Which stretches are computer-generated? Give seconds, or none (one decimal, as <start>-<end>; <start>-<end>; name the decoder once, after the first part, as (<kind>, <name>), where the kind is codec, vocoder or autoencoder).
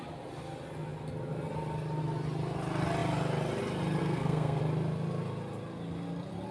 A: 4.0-4.6 (codec, SNAC)